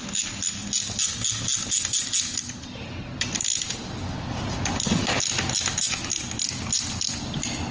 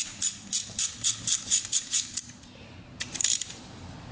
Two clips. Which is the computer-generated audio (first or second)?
second